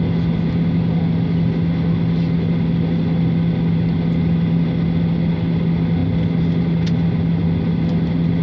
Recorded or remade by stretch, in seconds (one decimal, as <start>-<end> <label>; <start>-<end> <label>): 0.0-8.4 recorded